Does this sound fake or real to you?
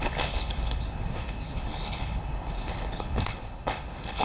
fake